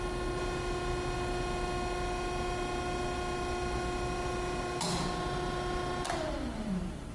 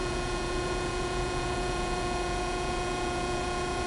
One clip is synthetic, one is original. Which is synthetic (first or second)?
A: second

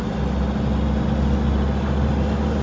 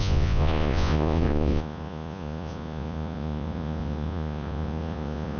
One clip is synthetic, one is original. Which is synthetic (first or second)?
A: second